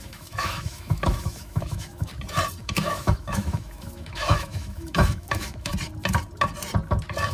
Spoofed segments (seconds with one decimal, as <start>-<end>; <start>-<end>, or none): 0.0-2.1; 2.6-5.7

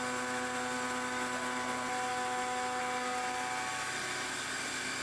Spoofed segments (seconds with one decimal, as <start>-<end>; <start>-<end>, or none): 2.1-2.8

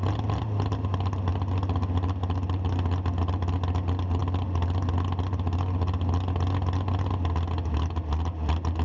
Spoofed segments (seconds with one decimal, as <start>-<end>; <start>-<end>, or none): none

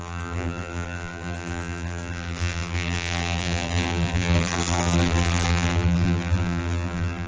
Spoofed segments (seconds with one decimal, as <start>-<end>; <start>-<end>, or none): 0.0-7.3

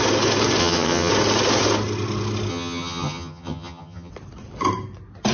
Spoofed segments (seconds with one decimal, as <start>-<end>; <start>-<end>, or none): 0.6-1.1; 2.5-4.1

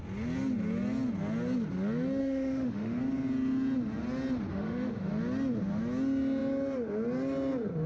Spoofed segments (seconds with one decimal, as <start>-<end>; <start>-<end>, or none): 2.2-3.0; 4.5-5.1

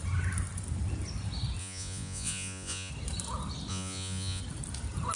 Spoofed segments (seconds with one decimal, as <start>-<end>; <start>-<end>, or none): 1.6-2.9; 3.7-4.4

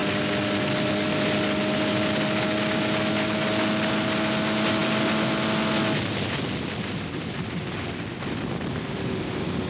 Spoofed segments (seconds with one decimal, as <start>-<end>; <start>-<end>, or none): none